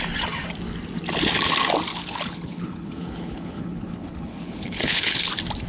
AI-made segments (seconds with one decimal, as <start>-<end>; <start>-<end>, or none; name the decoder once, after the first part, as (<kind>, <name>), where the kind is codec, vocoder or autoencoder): 1.9-5.3 (codec, HILCodec)